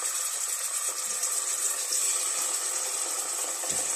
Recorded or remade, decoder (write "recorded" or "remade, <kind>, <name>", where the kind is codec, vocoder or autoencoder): recorded